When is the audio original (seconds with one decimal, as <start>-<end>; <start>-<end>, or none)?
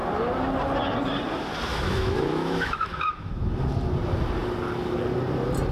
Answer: 0.0-1.7; 3.3-5.7